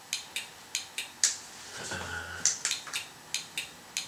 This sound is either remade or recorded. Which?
recorded